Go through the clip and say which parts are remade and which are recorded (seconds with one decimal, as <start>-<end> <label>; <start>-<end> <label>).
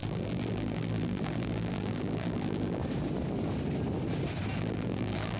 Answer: 0.0-2.8 remade; 2.8-4.6 recorded; 4.6-5.4 remade